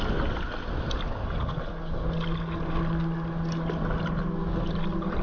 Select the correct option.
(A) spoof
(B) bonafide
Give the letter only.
B